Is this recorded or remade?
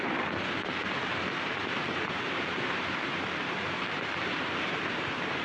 remade